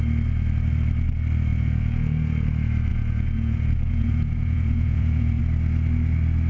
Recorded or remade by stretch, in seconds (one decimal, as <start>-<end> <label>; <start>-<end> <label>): 0.0-1.5 recorded; 1.5-2.3 remade; 2.3-2.9 recorded; 2.9-5.4 remade; 5.4-6.5 recorded